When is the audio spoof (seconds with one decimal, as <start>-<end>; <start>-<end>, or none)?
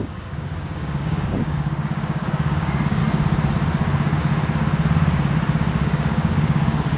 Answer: 0.0-3.0; 5.7-7.0